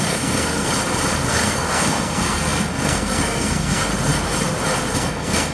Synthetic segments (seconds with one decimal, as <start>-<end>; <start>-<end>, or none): 0.0-0.7; 1.3-3.9; 4.9-5.5